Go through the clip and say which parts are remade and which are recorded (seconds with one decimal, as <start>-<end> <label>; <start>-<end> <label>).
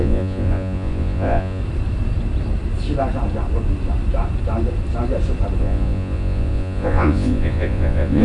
0.0-1.6 remade; 1.6-5.6 recorded; 5.6-8.2 remade